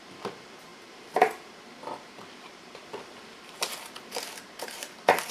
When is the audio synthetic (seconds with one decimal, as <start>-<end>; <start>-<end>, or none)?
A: 0.0-2.8; 3.4-5.3